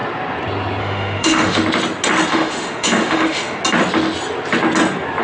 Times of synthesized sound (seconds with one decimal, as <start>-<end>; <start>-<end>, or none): 0.8-1.6; 2.3-3.6